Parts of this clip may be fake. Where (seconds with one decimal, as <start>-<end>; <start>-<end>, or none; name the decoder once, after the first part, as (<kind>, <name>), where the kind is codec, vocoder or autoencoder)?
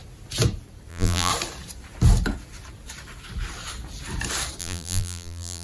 0.9-1.3 (vocoder, BigVGAN v2); 4.6-5.6